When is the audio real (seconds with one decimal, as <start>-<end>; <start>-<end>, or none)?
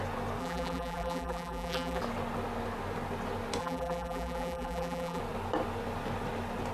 0.0-0.4; 2.0-3.6; 5.2-6.7